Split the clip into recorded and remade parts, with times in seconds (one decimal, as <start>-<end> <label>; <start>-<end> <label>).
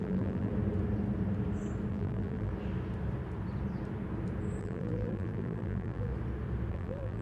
0.0-0.5 remade; 0.5-1.9 recorded; 1.9-2.5 remade; 2.5-4.6 recorded; 4.6-6.1 remade; 6.1-6.7 recorded; 6.7-7.2 remade